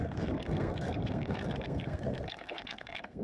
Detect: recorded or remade remade